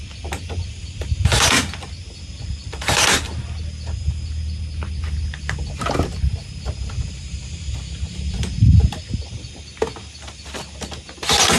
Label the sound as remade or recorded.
recorded